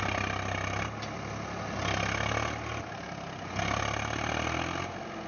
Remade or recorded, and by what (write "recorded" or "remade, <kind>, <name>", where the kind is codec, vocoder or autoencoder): recorded